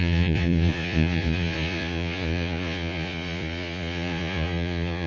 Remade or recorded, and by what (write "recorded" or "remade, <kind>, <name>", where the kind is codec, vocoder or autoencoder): remade, vocoder, Vocos